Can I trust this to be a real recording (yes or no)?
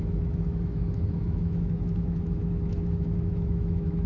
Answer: no